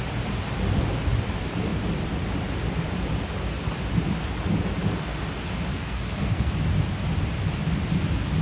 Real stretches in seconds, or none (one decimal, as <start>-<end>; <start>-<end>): 0.0-5.7; 6.5-8.4